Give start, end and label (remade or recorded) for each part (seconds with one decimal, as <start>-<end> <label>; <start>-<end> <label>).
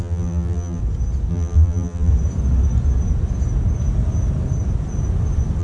0.0-0.8 remade; 0.8-1.3 recorded; 1.3-2.1 remade; 2.1-5.6 recorded